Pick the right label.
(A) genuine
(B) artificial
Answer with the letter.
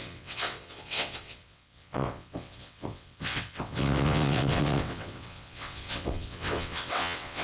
B